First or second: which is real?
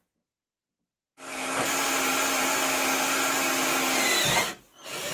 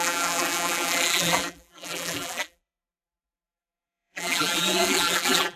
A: first